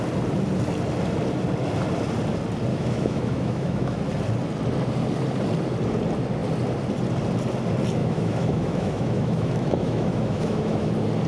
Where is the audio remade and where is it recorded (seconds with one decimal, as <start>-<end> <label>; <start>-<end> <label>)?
0.0-2.7 recorded; 2.7-4.0 remade; 4.0-8.0 recorded; 8.0-10.9 remade; 10.9-11.3 recorded